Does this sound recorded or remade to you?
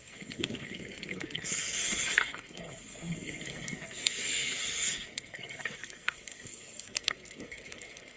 remade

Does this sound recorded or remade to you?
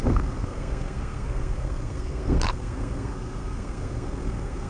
remade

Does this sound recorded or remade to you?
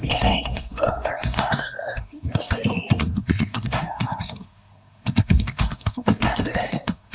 remade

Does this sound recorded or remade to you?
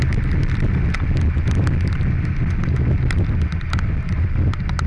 recorded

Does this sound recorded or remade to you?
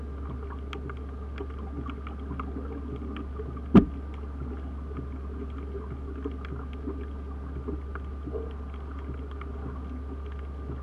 recorded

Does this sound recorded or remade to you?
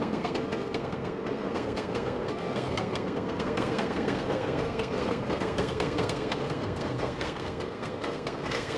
remade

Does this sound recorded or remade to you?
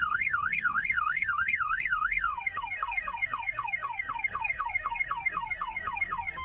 remade